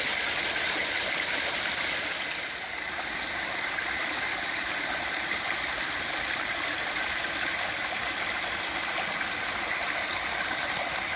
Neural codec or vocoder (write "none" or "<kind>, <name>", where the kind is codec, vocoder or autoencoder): none